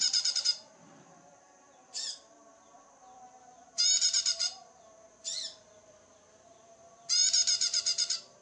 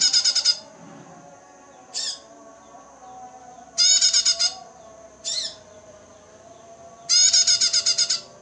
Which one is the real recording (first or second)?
second